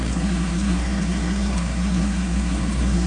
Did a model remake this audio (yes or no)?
yes